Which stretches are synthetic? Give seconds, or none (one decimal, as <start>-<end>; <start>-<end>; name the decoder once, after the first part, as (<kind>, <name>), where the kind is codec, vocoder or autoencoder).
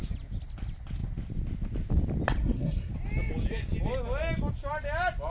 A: 2.4-2.9 (codec, SNAC)